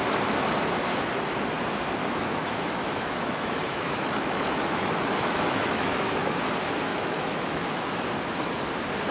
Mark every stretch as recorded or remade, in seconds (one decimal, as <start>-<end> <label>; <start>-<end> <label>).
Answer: 0.0-2.0 recorded; 2.0-6.4 remade; 6.4-6.9 recorded; 6.9-8.1 remade; 8.1-9.1 recorded